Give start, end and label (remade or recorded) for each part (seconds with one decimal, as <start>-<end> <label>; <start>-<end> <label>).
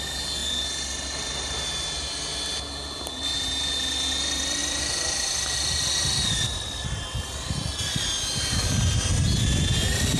0.0-10.2 recorded